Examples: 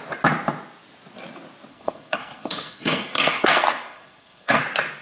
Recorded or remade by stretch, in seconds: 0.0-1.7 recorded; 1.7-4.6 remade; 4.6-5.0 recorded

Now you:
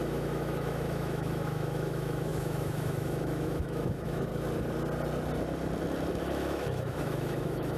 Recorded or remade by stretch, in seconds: 0.0-4.3 remade; 4.3-6.2 recorded; 6.2-7.8 remade

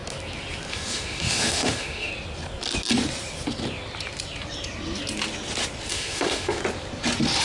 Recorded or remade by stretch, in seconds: 0.0-0.7 recorded; 0.7-2.1 remade; 2.1-5.9 recorded; 5.9-6.6 remade; 6.6-7.4 recorded

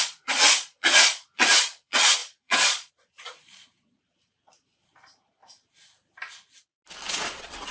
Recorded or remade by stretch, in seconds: 0.0-5.4 remade; 5.4-7.1 recorded; 7.1-7.7 remade

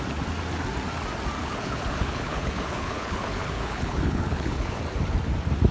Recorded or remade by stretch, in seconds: 0.0-1.4 recorded; 1.4-4.8 remade; 4.8-5.7 recorded